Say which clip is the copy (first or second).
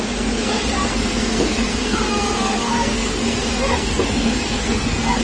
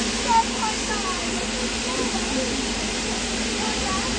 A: first